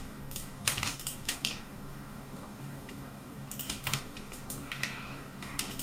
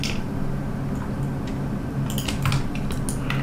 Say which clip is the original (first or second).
second